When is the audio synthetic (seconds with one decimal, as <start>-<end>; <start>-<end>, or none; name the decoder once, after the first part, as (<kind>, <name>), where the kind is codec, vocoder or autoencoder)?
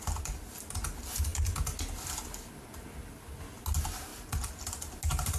none